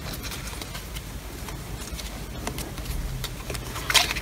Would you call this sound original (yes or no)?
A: yes